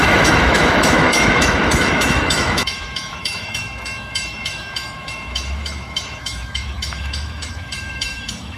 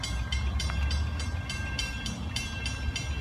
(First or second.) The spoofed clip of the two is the first